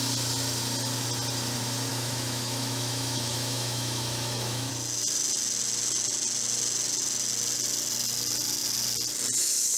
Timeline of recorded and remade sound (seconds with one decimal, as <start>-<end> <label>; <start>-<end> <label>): 0.0-1.9 recorded; 1.9-4.7 remade; 4.7-9.8 recorded